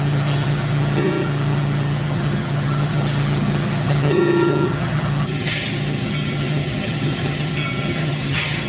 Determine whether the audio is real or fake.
fake